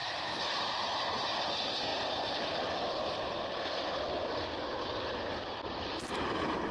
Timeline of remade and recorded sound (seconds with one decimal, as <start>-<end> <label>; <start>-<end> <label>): 0.0-0.5 remade; 0.5-6.7 recorded